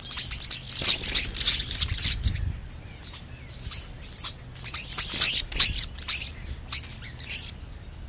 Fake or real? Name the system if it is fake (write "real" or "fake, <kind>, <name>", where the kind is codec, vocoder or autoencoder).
real